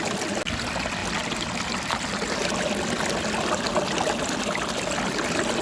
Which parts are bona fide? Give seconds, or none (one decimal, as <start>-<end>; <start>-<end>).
0.0-5.6